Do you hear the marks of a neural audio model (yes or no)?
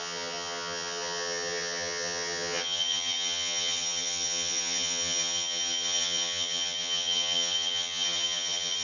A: yes